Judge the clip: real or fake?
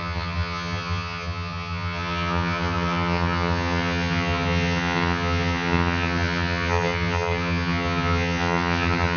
fake